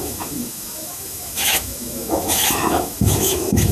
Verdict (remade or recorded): remade